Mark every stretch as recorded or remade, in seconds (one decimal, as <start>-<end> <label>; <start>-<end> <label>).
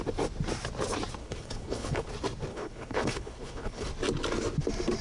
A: 0.0-1.2 recorded; 1.2-2.1 remade; 2.1-2.5 recorded; 2.5-3.9 remade; 3.9-5.0 recorded